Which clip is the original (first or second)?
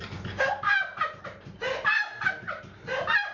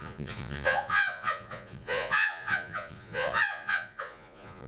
first